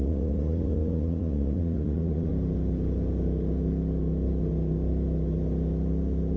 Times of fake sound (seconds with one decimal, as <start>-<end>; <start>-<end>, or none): 0.0-2.3